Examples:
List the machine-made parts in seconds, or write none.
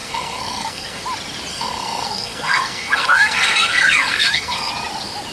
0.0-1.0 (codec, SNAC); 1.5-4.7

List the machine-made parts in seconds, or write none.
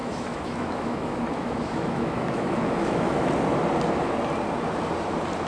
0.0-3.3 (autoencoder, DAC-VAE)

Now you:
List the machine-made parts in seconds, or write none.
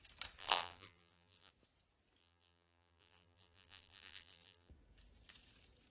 0.4-1.5 (vocoder, BigVGAN v2); 2.2-4.7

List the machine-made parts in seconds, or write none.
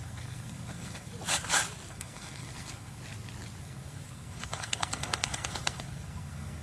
0.0-1.1 (codec, SNAC); 1.9-3.0; 3.6-6.6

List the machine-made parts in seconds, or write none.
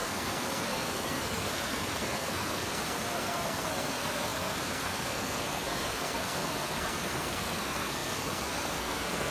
0.0-9.3 (codec, SNAC)